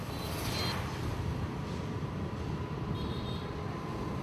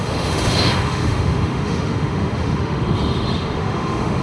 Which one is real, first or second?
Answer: first